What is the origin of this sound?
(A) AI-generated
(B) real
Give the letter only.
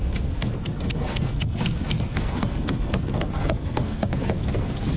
A